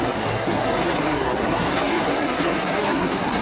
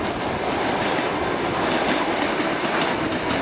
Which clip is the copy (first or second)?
first